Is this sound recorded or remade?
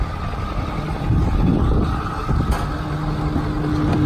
recorded